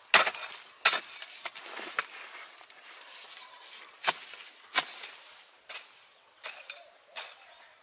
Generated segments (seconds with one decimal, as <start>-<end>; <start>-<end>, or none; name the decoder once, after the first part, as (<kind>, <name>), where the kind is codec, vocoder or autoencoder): 2.0-6.7 (vocoder, BigVGAN v2)